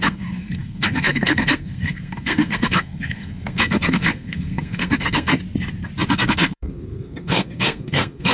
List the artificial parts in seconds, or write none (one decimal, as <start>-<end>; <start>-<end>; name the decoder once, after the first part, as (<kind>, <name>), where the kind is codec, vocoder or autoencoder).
0.0-5.3 (codec, SNAC); 6.3-8.3